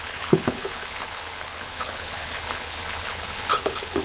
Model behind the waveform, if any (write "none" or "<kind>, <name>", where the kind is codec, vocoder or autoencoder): codec, HILCodec